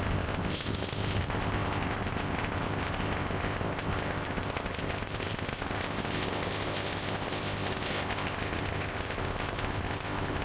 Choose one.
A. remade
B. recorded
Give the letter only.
A